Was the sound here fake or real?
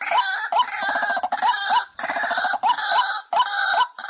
real